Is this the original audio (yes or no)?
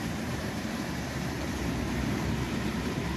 no